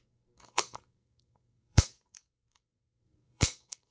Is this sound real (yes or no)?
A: no